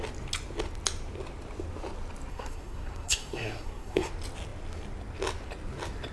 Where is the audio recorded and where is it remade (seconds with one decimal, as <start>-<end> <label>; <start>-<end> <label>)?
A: 0.0-2.3 recorded; 2.3-4.1 remade; 4.1-6.1 recorded